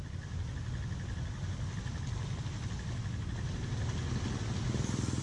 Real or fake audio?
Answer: real